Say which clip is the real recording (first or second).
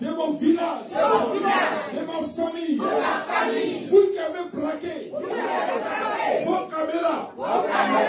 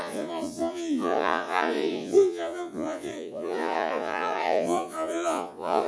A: first